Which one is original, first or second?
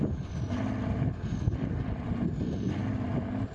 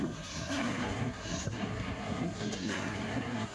first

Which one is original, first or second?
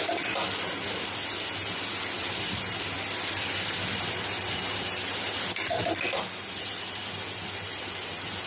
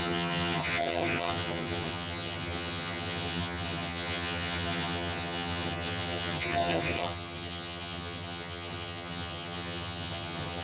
first